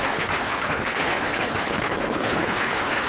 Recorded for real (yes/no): no